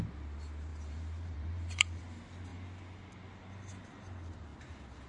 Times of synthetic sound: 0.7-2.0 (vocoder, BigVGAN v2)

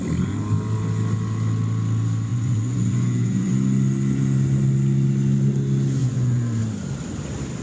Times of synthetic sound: 2.3-3.5 (vocoder, Vocos); 6.0-6.6

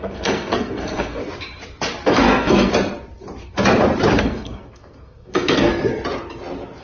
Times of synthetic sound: 0.0-1.2 (codec, SNAC); 2.1-2.7; 4.2-5.7